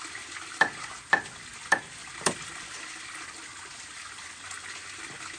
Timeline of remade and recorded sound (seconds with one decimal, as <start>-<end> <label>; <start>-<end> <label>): 0.0-5.4 recorded

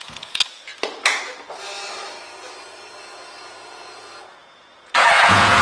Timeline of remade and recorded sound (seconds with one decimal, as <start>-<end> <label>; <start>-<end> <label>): 0.0-0.7 remade; 0.7-3.4 recorded; 3.4-5.6 remade